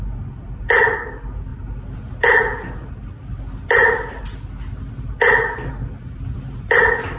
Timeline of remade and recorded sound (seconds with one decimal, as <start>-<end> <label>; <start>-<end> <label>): 0.0-7.2 recorded